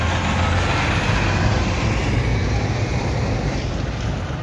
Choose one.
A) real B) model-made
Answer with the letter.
A